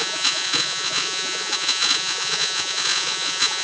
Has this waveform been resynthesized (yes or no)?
yes